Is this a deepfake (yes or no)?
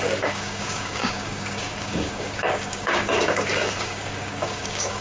yes